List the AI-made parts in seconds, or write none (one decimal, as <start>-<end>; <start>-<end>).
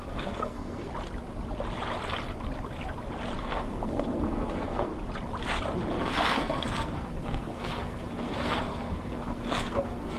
0.0-0.9; 3.4-4.9; 5.9-10.2